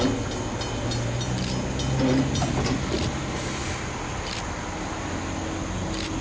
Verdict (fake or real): real